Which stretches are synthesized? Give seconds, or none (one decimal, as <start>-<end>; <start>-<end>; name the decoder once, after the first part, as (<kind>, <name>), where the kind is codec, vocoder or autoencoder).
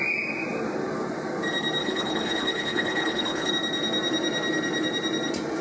1.8-3.5 (codec, HILCodec)